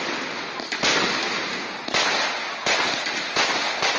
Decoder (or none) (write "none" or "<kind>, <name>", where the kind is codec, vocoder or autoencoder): none